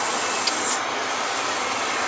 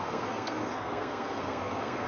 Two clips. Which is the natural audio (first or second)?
first